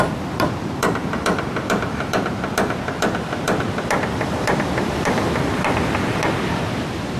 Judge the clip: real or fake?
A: fake